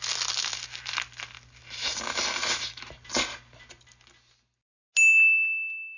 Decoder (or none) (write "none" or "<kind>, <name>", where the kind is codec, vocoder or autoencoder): none